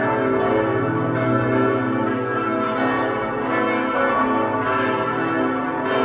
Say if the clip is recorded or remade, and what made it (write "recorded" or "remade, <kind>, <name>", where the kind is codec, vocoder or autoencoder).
recorded